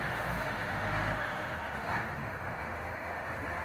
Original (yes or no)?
no